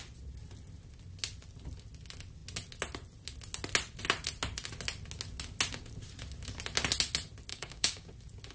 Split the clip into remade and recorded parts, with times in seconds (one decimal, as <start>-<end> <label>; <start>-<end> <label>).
0.0-7.5 recorded; 7.5-8.1 remade; 8.1-8.5 recorded